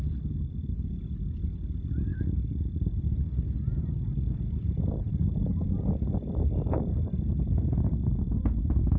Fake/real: real